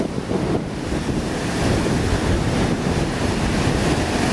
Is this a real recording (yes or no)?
yes